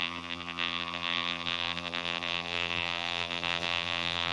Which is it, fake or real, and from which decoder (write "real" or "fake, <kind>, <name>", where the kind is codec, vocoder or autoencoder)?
fake, vocoder, BigVGAN v2